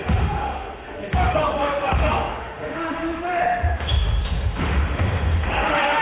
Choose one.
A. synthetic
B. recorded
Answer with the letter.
A